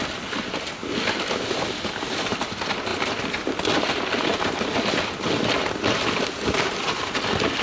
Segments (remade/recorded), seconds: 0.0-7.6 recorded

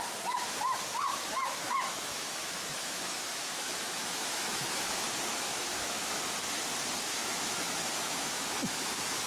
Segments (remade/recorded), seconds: 0.0-1.1 recorded; 1.1-6.2 remade; 6.2-7.2 recorded; 7.2-8.9 remade; 8.9-9.3 recorded

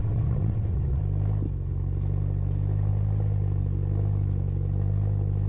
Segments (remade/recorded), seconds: 0.0-1.0 remade; 1.0-5.5 recorded

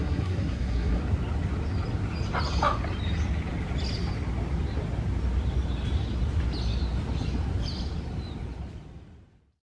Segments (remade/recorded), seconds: 0.0-1.0 remade; 1.0-9.7 recorded

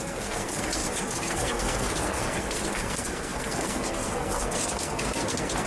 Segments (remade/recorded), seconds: 0.0-5.7 remade

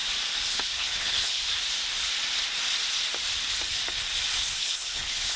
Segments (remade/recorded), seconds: 0.0-0.5 recorded; 0.5-1.4 remade; 1.4-4.6 recorded; 4.6-5.4 remade

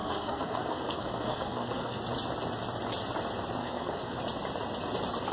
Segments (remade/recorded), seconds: 0.0-2.0 remade; 2.0-3.6 recorded; 3.6-4.2 remade; 4.2-5.3 recorded